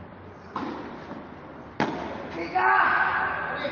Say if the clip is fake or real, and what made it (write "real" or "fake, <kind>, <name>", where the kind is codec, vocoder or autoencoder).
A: real